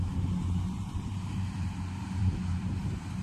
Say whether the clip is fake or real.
fake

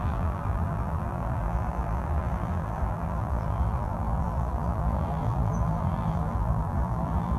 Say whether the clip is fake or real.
fake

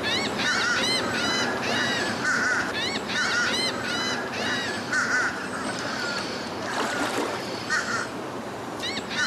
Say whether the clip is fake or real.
fake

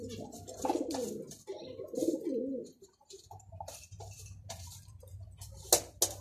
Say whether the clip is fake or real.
real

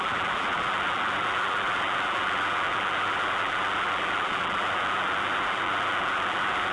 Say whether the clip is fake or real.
fake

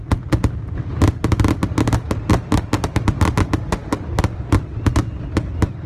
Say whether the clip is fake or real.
real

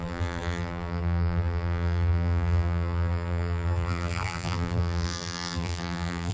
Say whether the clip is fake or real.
fake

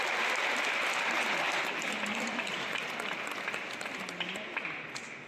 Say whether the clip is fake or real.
real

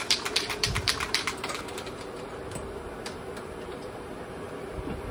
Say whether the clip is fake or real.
fake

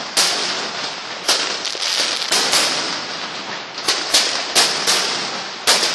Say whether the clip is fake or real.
real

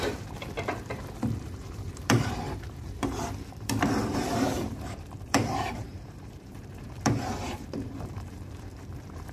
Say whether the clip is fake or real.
fake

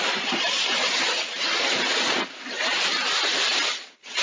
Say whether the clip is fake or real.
fake